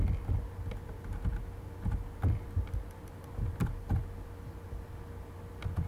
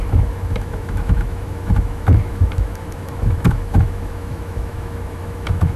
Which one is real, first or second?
first